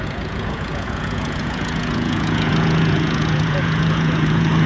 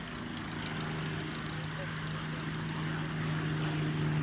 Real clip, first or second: second